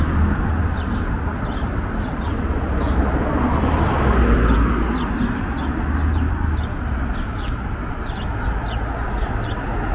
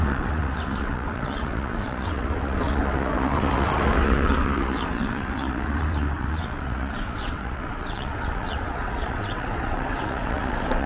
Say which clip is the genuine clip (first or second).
first